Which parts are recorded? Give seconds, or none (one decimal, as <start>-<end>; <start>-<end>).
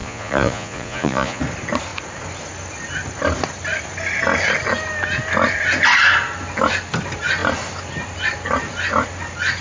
1.4-9.6